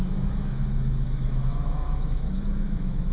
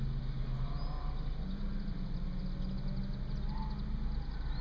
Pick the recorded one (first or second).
second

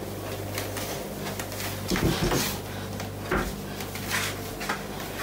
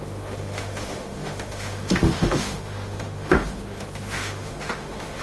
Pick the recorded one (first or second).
first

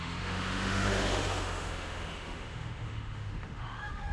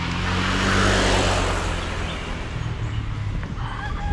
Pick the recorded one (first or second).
second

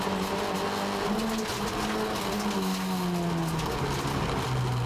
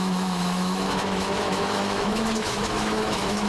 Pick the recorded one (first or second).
first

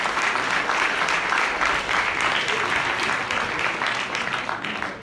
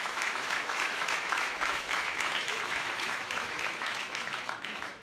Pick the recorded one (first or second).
first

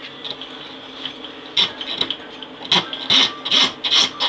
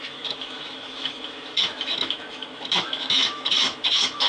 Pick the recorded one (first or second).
first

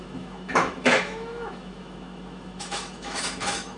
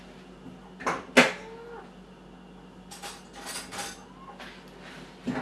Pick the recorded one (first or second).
second